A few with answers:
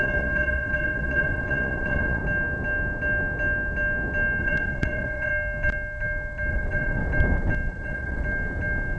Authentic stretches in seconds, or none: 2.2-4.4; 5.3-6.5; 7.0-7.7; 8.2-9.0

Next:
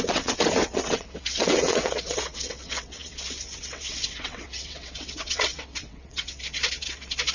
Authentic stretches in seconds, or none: none